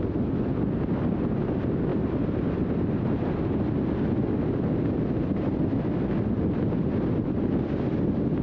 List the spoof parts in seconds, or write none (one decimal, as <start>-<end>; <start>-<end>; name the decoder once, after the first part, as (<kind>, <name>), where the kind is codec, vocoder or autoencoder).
1.9-3.2 (vocoder, BigVGAN v2)